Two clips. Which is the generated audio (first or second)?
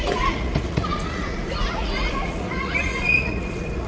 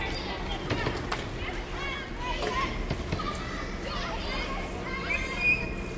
first